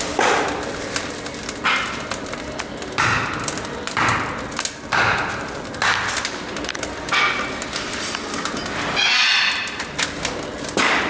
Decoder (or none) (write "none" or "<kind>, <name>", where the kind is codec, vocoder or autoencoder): none